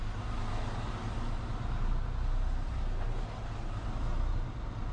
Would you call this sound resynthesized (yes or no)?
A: no